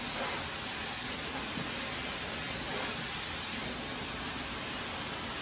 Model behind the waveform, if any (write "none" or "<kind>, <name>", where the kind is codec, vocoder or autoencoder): none